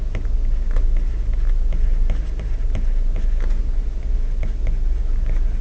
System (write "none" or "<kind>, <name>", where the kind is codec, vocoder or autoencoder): none